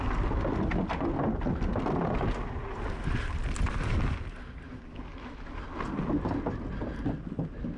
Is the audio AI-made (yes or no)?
no